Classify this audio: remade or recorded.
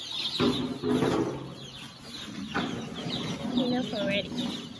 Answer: recorded